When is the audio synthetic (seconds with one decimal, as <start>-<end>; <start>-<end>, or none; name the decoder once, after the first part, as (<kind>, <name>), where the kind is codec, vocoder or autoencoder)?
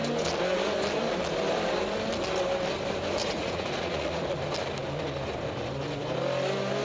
3.2-4.2 (vocoder, Vocos)